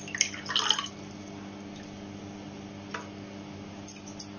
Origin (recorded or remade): recorded